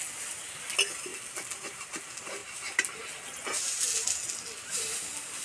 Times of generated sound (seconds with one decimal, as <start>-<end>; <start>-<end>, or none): none